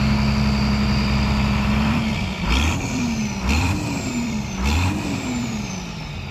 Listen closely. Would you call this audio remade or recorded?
remade